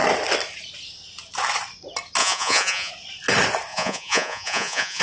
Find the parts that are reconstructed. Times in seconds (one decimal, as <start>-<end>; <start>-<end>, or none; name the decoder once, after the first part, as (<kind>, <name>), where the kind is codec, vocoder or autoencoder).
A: 2.2-2.9 (vocoder, Vocos); 3.7-5.0